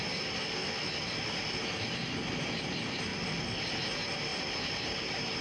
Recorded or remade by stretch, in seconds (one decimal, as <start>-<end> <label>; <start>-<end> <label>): 0.0-0.6 remade; 0.6-2.4 recorded; 2.4-3.1 remade; 3.1-3.7 recorded; 3.7-5.4 remade